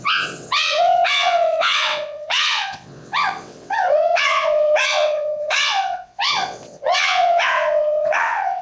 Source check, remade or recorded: remade